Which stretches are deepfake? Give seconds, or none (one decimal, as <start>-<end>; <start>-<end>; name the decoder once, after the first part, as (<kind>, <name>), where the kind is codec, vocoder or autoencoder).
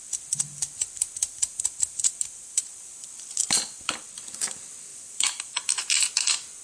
1.2-3.1 (vocoder, BigVGAN v2); 4.9-5.5